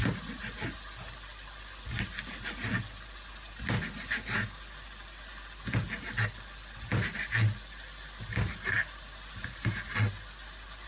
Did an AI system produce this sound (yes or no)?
no